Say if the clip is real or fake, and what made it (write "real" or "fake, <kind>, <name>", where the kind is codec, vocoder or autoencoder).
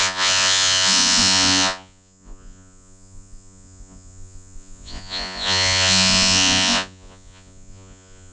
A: fake, vocoder, Vocos